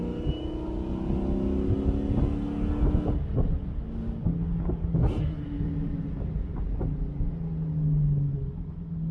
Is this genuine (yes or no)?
yes